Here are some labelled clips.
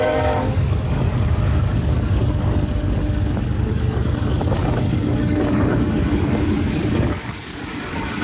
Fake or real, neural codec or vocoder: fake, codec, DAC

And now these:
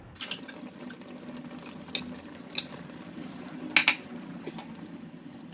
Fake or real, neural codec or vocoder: real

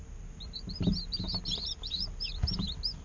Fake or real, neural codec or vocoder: real